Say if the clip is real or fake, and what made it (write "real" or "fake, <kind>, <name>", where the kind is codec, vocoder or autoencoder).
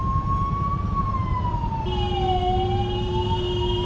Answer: real